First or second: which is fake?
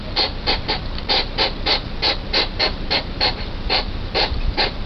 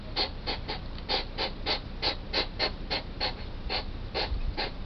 first